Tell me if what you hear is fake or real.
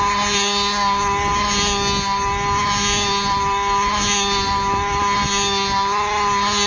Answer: real